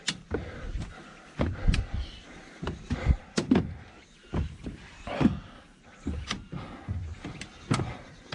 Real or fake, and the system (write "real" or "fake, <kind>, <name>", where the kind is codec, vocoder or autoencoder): real